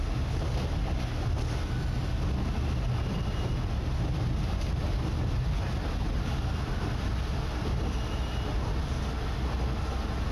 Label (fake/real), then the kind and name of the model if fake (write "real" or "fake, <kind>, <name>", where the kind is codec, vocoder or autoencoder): real